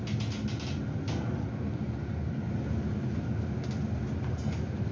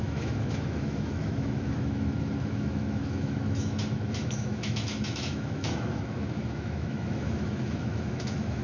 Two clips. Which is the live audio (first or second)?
first